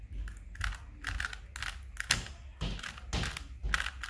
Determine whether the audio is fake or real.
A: real